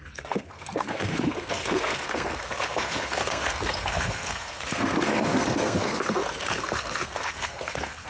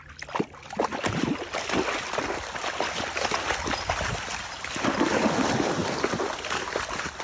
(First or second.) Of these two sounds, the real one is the second